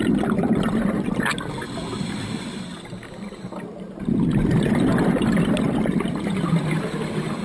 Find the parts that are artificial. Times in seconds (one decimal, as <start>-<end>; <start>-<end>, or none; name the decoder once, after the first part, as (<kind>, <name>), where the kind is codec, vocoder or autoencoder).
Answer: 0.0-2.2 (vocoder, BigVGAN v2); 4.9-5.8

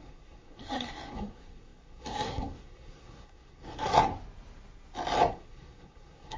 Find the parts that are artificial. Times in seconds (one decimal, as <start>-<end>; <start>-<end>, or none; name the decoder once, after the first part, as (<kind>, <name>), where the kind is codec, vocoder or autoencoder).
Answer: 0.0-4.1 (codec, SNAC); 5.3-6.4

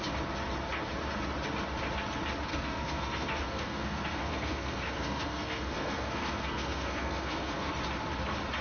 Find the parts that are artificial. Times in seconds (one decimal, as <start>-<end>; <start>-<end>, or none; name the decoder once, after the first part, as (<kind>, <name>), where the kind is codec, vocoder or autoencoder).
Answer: 2.5-7.7 (codec, SNAC)

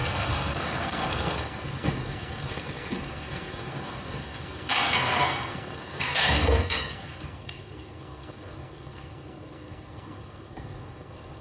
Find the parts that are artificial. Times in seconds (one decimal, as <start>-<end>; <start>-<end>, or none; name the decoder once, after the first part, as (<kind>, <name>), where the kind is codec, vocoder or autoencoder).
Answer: 0.0-11.4 (codec, SNAC)

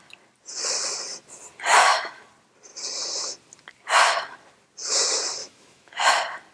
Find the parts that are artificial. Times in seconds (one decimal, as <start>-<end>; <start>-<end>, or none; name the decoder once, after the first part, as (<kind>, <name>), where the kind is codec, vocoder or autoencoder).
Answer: 1.8-2.3 (autoencoder, DAC-VAE); 5.4-6.1

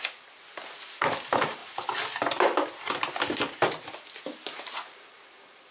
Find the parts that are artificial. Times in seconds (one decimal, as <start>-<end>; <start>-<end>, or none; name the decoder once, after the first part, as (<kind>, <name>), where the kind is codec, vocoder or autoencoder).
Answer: none

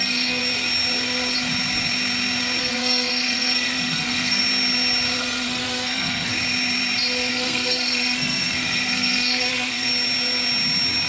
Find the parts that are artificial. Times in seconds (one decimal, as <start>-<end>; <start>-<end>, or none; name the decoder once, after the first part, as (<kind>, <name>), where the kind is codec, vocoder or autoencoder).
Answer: 0.0-0.4 (codec, SNAC); 2.6-4.4; 5.2-6.3; 7.3-9.9

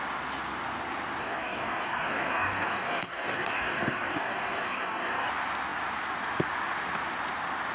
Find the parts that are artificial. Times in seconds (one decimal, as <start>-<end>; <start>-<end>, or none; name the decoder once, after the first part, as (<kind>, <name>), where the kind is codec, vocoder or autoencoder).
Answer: 1.2-5.3 (codec, DAC)